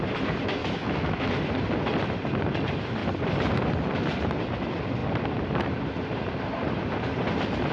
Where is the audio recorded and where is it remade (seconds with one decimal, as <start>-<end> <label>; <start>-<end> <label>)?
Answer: 0.0-0.6 recorded; 0.6-1.3 remade; 1.3-7.7 recorded